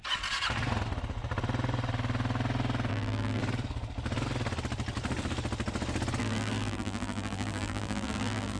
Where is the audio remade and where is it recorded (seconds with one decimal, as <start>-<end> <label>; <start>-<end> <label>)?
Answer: 0.0-2.9 recorded; 2.9-3.4 remade; 3.4-6.2 recorded; 6.2-8.6 remade